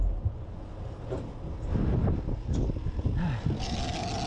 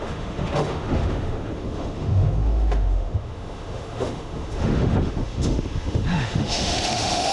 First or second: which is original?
first